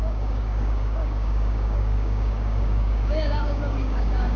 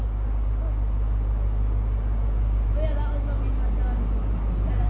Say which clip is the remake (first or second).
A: first